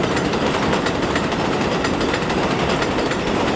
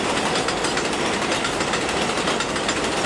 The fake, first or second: first